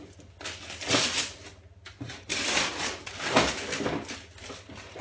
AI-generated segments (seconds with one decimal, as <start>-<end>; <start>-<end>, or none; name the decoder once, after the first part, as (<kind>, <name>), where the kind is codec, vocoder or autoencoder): none